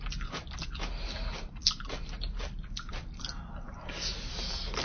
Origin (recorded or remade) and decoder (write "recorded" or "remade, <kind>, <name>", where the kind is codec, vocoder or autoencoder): recorded